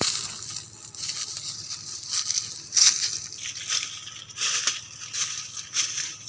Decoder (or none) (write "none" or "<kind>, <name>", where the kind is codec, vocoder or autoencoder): none